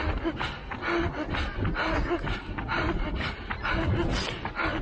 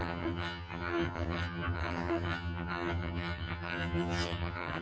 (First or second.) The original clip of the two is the first